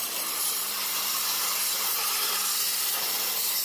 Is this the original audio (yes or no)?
no